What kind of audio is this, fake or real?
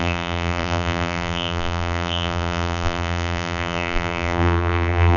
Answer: fake